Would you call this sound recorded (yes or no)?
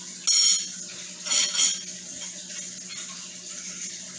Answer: yes